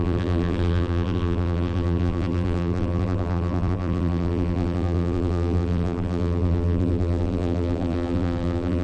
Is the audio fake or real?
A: fake